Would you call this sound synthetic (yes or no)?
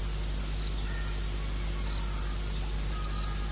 no